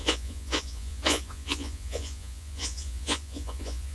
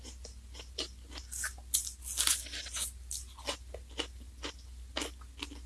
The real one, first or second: second